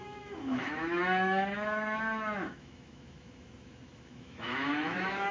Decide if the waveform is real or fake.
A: fake